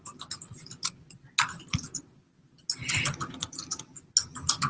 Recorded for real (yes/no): yes